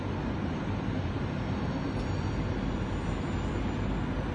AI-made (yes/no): no